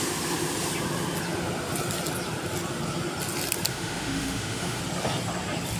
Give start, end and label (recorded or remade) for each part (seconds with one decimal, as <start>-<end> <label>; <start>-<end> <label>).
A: 0.0-3.7 recorded; 3.7-4.8 remade; 4.8-5.8 recorded